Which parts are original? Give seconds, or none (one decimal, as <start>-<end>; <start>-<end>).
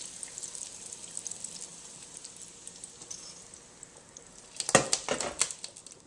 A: 0.0-6.1